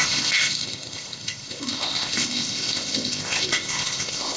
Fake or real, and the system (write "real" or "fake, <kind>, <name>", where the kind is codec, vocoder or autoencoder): fake, codec, ZipCodec